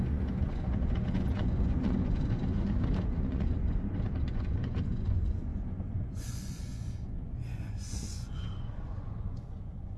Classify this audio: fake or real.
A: fake